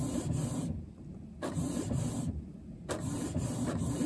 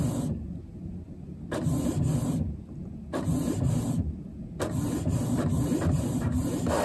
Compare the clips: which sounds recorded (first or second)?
second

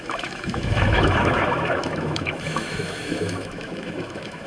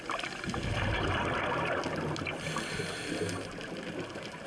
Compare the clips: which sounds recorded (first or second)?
second